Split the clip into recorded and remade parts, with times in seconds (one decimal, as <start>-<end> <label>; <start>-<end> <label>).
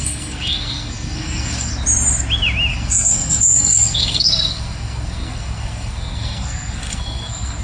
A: 0.0-1.7 remade; 1.7-2.7 recorded; 2.7-7.6 remade